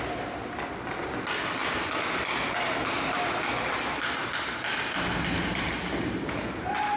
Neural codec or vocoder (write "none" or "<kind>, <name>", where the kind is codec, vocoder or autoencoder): none